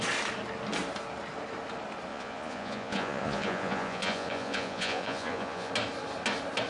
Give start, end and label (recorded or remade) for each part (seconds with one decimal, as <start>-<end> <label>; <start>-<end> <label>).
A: 0.0-2.1 recorded; 2.1-5.7 remade; 5.7-6.7 recorded